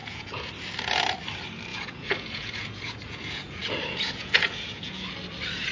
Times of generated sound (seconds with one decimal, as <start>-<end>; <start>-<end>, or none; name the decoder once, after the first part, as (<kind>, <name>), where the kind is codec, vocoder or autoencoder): 0.0-0.5 (vocoder, Vocos); 1.7-5.1